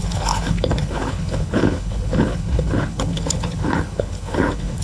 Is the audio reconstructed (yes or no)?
yes